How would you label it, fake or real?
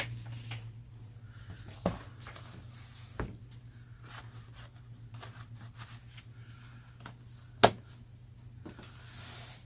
real